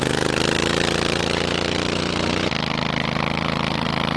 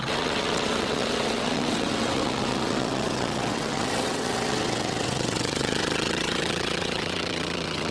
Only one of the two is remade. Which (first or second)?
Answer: second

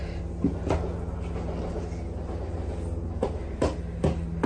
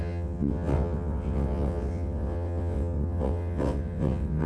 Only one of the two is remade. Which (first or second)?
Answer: second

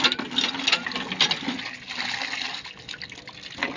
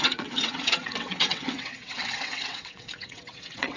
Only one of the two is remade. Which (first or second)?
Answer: second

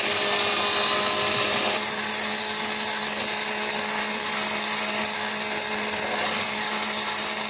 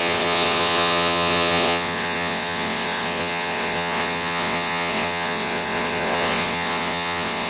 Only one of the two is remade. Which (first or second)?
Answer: second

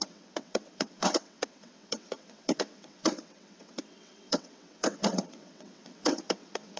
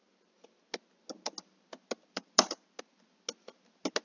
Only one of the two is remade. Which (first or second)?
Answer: first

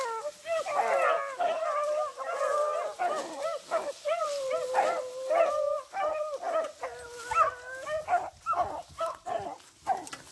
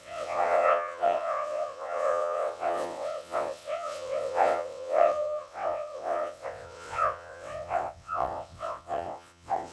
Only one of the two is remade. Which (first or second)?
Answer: second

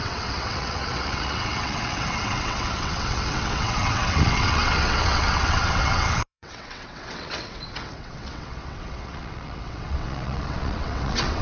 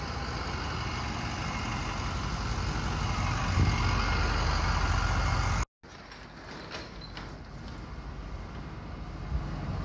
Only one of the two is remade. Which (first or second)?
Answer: first